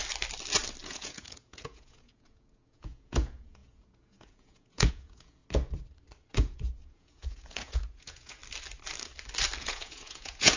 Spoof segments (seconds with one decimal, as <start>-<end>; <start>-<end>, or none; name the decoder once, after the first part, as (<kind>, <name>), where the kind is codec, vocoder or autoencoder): 0.8-5.4 (vocoder, Vocos); 6.3-8.4; 9.6-10.6